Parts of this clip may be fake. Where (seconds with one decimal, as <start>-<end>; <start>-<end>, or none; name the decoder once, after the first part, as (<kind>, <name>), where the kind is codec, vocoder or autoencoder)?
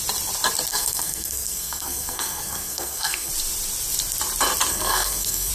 0.7-3.3 (codec, SNAC); 4.7-5.5